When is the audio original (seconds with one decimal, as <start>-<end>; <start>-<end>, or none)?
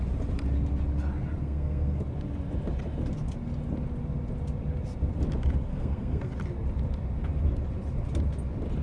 0.0-1.4; 2.0-5.7; 6.3-8.8